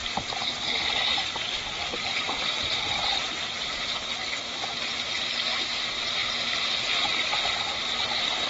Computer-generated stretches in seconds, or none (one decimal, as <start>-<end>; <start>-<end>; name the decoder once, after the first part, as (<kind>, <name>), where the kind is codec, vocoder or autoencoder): none